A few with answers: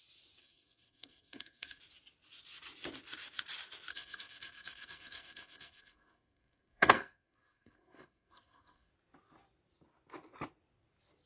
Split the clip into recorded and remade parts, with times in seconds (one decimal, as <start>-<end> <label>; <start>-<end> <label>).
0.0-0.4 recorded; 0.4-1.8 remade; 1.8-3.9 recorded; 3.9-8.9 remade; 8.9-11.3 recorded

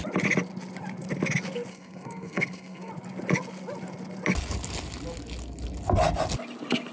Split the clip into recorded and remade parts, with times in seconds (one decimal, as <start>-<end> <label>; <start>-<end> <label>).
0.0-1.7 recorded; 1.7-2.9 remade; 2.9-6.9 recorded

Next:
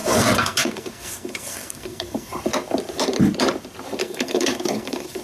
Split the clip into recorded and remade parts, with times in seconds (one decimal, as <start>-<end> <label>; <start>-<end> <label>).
0.0-2.3 remade; 2.3-4.0 recorded; 4.0-5.2 remade

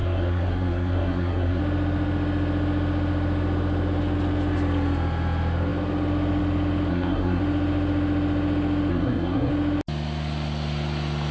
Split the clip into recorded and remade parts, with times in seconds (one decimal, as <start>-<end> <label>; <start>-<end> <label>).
0.0-1.6 remade; 1.6-6.9 recorded; 6.9-7.4 remade; 7.4-8.9 recorded; 8.9-9.5 remade; 9.5-11.3 recorded

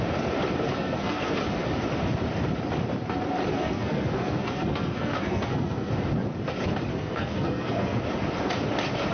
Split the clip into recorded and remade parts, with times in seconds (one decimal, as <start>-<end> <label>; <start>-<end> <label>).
0.0-0.7 recorded; 0.7-1.3 remade; 1.3-3.5 recorded; 3.5-5.9 remade; 5.9-6.9 recorded; 6.9-8.0 remade; 8.0-9.1 recorded

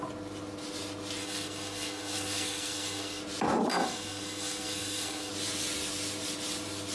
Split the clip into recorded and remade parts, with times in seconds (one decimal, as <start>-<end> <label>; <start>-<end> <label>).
0.0-1.2 recorded; 1.2-3.2 remade; 3.2-3.7 recorded; 3.7-5.3 remade; 5.3-6.9 recorded

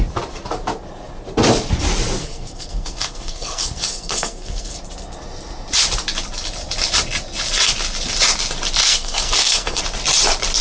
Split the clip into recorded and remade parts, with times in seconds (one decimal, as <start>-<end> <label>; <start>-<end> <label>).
0.0-2.2 recorded; 2.2-4.8 remade; 4.8-8.8 recorded; 8.8-9.8 remade; 9.8-10.6 recorded